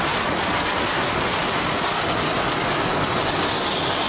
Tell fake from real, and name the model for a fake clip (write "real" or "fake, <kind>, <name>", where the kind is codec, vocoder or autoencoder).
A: real